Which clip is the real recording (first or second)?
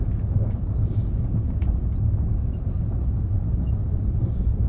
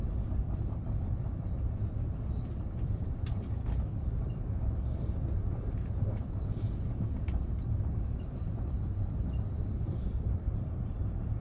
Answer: first